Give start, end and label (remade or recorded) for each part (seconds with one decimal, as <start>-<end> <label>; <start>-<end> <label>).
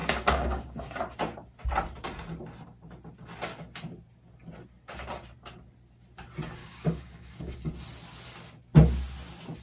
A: 0.0-1.0 remade; 1.0-6.6 recorded; 6.6-7.7 remade; 7.7-9.6 recorded